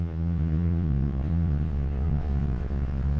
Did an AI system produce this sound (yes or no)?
yes